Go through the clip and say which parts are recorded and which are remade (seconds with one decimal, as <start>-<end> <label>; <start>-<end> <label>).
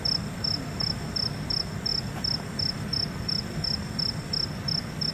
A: 0.0-5.1 recorded